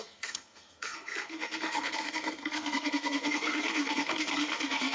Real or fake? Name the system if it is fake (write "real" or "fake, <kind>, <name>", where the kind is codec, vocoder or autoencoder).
fake, codec, SNAC